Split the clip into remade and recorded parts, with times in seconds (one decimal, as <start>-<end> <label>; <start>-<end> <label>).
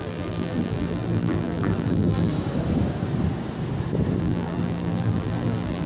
0.0-2.3 remade; 2.3-4.2 recorded; 4.2-5.9 remade